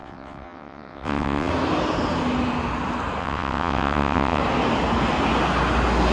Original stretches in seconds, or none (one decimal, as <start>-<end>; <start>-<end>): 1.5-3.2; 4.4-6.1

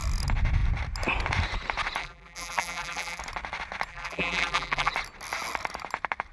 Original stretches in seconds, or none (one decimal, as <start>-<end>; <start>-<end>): 0.0-2.0; 3.2-3.9; 4.9-6.3

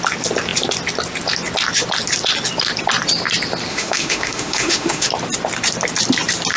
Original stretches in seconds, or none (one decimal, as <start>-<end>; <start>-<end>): 0.0-3.7; 5.1-6.6

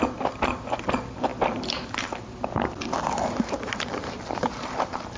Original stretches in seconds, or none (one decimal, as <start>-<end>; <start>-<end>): 0.0-1.3; 3.3-5.2

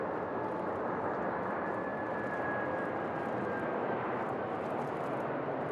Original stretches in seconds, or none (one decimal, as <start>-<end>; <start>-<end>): 0.0-5.7